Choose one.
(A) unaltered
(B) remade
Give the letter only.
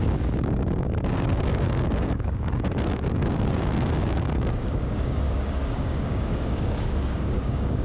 B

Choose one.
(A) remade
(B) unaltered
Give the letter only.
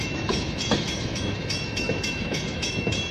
A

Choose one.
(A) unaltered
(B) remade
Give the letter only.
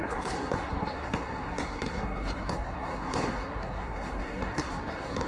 B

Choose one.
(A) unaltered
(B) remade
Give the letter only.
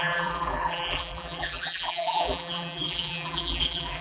B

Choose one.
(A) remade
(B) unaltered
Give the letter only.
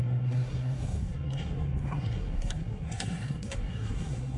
A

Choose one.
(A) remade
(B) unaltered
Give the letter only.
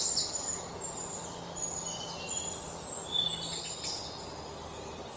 B